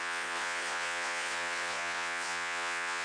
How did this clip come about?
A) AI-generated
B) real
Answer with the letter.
A